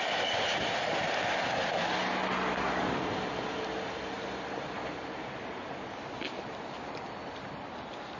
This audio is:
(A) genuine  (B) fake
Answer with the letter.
A